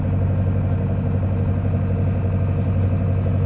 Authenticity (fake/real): real